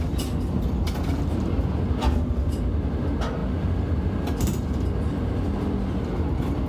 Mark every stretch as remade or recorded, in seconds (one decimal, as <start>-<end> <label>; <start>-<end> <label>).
0.0-6.7 recorded